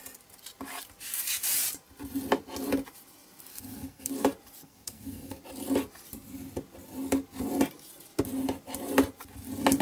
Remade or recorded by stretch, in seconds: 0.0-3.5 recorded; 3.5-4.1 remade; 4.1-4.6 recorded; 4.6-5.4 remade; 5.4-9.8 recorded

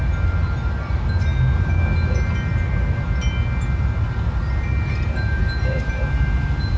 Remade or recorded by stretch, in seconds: 0.0-6.8 recorded

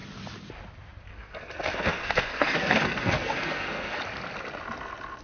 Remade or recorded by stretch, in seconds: 0.0-1.1 recorded; 1.1-4.0 remade; 4.0-5.2 recorded

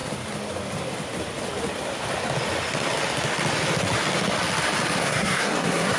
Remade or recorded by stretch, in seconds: 0.0-5.0 recorded; 5.0-6.0 remade

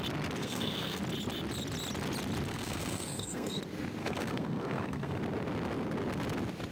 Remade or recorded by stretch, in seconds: 0.0-0.4 recorded; 0.4-1.0 remade; 1.0-2.5 recorded; 2.5-3.6 remade; 3.6-4.0 recorded; 4.0-5.2 remade; 5.2-6.7 recorded

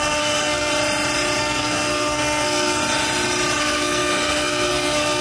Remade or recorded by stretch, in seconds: 0.0-0.7 remade; 0.7-1.4 recorded; 1.4-2.8 remade; 2.8-3.6 recorded; 3.6-5.2 remade